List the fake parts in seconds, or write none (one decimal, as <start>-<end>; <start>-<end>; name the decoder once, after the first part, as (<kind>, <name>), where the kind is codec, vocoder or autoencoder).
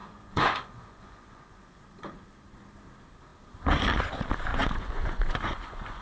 0.0-1.8 (vocoder, Vocos); 4.5-6.0